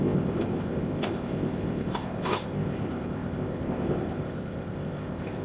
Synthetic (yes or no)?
yes